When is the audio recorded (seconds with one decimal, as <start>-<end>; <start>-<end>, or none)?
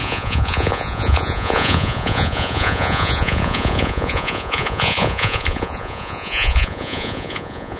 none